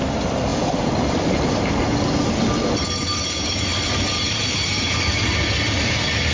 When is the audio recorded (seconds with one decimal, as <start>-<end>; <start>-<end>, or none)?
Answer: 0.0-6.3